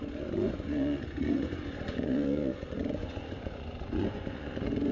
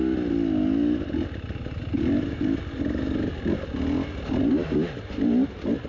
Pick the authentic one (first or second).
second